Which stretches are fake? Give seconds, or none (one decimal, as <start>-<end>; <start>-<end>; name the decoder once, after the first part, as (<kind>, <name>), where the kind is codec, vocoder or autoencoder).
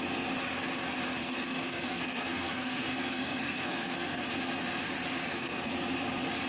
1.2-4.2 (codec, SNAC); 5.2-5.7